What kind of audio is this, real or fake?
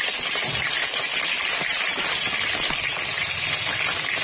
real